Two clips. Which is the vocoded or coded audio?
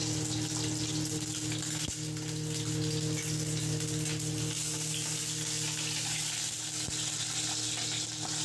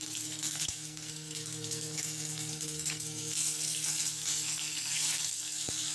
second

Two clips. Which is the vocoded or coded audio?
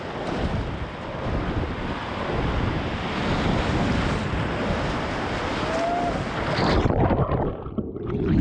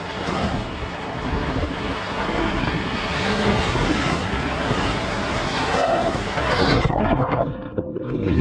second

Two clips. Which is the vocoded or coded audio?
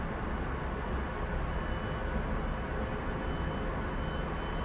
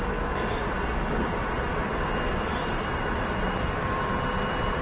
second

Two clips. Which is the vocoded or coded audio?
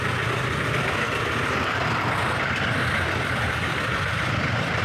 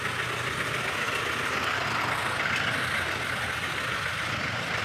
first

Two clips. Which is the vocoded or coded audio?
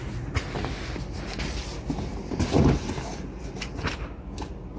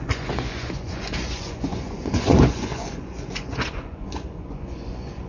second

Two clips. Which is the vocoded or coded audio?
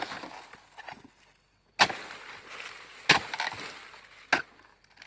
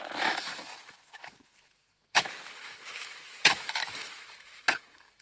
second